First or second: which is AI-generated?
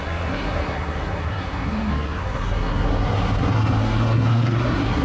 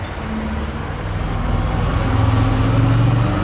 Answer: first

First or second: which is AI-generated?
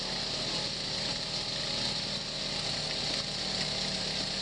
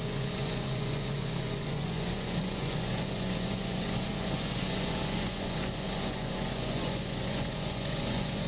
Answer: second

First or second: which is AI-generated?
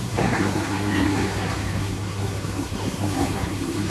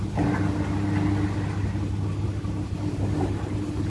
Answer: first